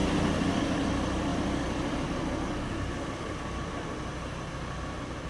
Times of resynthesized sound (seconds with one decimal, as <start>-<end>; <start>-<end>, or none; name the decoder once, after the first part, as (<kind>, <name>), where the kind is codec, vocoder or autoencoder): 0.0-0.6 (vocoder, BigVGAN v2)